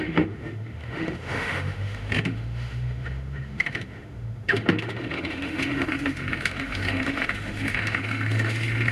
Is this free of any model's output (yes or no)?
no